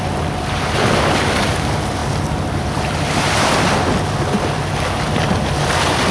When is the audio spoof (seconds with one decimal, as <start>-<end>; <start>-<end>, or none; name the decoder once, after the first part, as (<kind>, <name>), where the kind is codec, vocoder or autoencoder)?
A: none